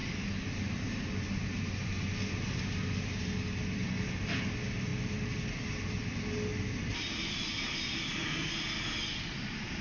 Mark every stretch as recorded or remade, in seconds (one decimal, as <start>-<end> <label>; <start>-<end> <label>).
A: 0.0-9.8 recorded